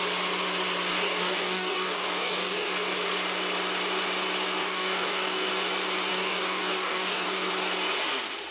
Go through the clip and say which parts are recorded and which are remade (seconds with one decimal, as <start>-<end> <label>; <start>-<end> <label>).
0.0-0.9 recorded; 0.9-2.7 remade; 2.7-4.6 recorded; 4.6-5.5 remade; 5.5-6.1 recorded; 6.1-7.5 remade; 7.5-8.5 recorded